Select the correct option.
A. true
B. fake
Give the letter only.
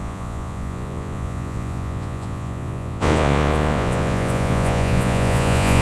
B